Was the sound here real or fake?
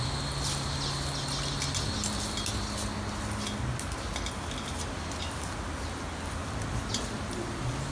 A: real